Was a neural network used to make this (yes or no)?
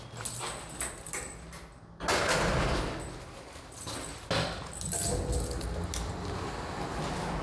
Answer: no